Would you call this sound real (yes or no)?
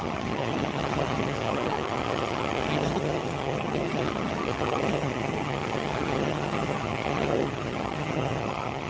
no